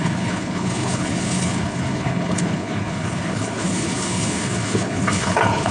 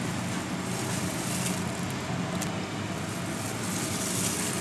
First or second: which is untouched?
second